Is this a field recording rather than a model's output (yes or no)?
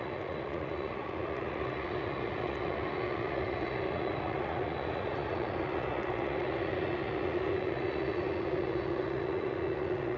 no